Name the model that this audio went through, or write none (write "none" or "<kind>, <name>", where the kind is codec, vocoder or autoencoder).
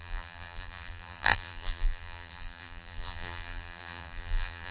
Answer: vocoder, BigVGAN v2